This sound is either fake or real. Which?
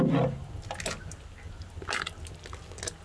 real